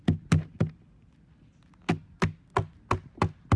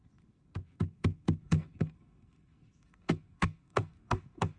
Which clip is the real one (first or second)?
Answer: first